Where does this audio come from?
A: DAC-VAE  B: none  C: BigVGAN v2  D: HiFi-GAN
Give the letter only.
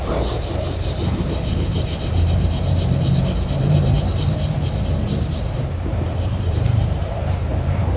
C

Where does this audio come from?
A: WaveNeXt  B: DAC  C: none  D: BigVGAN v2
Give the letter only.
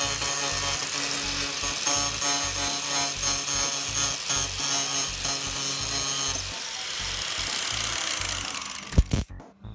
C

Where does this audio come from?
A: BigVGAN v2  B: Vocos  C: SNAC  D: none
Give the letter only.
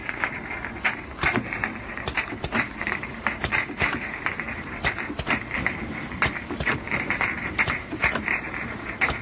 A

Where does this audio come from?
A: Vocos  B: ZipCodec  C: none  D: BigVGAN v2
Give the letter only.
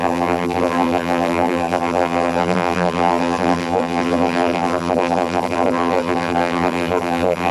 D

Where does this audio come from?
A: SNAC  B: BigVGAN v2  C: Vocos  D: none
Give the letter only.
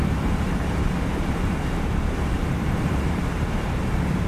B